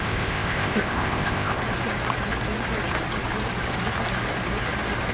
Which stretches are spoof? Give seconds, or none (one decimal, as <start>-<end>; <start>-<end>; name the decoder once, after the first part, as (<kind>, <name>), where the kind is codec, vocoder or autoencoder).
0.0-1.6 (codec, ZipCodec)